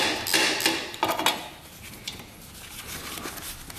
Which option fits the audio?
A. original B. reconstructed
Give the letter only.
A